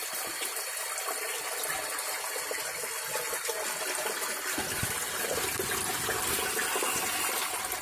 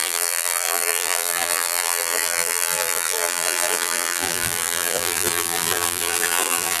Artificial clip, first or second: second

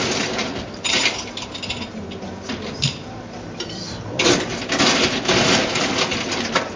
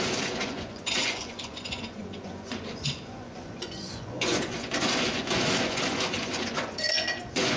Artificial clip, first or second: second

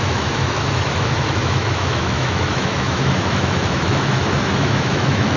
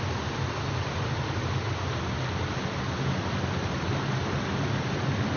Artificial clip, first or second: first